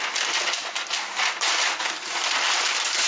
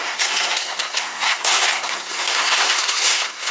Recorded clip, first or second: first